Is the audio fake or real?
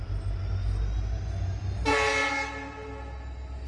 real